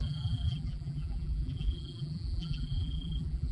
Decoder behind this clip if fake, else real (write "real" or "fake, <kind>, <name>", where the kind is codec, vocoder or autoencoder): fake, vocoder, BigVGAN v2